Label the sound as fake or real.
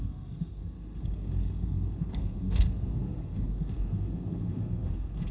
fake